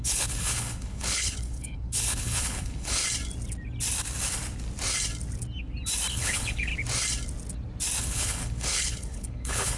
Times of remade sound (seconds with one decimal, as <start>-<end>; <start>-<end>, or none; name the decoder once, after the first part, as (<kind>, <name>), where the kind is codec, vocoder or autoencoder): 0.0-3.0 (codec, HILCodec); 6.1-6.7; 8.0-9.8